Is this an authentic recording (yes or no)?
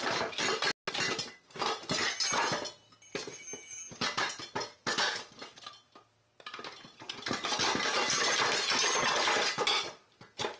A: yes